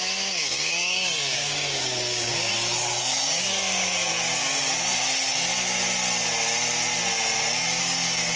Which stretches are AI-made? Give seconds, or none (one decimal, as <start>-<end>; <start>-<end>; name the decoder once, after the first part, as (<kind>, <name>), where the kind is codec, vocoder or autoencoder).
0.0-2.5 (codec, DAC); 3.0-4.1; 7.8-8.4